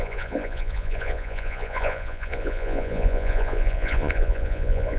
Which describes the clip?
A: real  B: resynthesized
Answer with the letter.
B